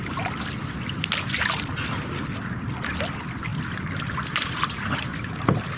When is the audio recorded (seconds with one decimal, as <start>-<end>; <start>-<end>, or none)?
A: none